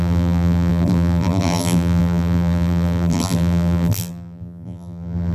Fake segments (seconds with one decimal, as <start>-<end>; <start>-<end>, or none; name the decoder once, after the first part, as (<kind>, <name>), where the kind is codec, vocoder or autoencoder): 0.0-5.3 (vocoder, BigVGAN v2)